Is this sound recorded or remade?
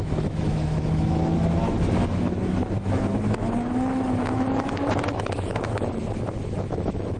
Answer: remade